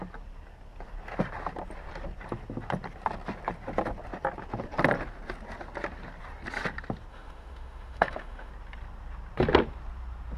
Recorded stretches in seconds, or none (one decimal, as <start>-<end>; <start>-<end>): 0.0-7.1; 8.5-10.4